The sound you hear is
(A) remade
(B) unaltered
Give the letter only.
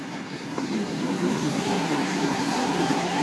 A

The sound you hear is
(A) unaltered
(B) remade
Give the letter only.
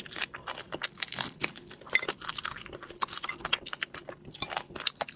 A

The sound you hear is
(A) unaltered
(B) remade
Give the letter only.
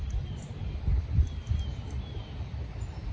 A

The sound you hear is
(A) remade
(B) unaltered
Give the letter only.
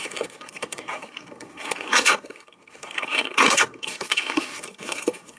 A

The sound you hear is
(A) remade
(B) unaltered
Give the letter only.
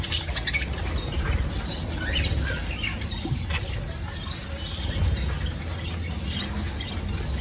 B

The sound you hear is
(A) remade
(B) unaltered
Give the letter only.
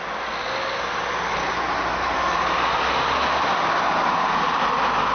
B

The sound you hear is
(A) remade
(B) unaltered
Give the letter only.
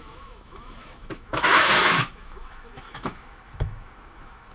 A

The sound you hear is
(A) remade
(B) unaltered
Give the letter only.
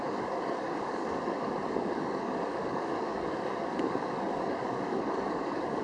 A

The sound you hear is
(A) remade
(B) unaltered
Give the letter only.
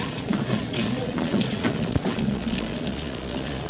A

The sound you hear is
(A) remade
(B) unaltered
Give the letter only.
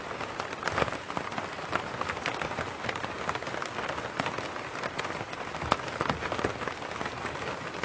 B